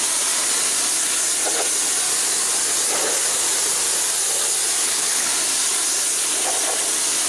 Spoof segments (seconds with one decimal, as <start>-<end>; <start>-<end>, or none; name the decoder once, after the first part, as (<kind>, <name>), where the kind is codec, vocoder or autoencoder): 4.8-5.3 (codec, HILCodec)